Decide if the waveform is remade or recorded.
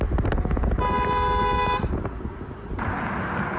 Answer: recorded